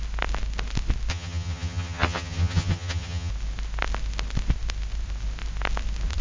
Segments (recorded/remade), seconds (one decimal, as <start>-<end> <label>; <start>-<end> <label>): 0.0-1.1 recorded; 1.1-3.3 remade; 3.3-6.2 recorded